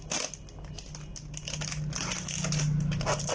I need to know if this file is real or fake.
real